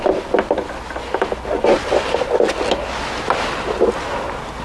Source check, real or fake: real